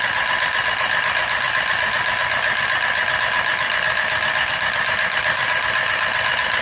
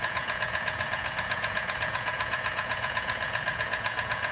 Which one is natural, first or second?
first